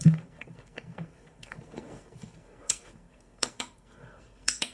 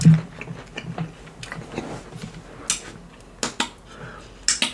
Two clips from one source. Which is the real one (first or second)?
second